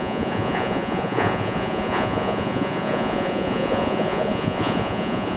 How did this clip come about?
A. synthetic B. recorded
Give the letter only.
A